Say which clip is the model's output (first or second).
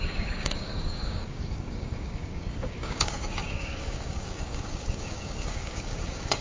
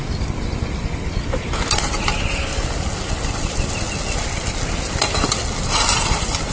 first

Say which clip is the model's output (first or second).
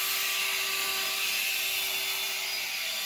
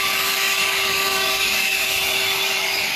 second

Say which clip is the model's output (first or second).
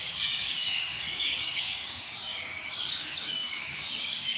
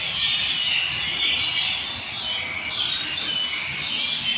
first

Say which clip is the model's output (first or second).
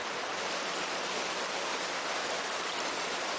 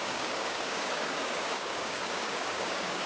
second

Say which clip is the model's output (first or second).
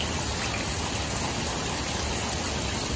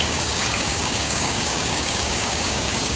second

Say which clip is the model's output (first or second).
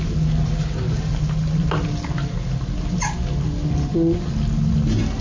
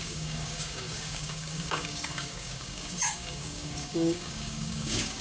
second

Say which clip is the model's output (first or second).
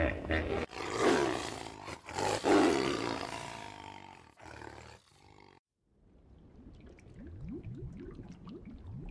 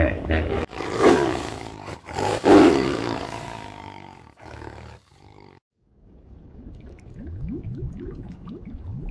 second